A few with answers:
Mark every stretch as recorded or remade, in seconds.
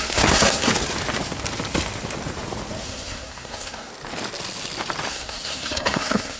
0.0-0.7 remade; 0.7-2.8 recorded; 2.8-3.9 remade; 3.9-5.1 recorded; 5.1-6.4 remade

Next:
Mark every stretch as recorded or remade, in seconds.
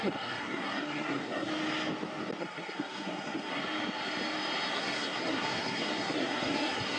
0.0-1.5 remade; 1.5-2.4 recorded; 2.4-3.6 remade; 3.6-4.7 recorded; 4.7-7.0 remade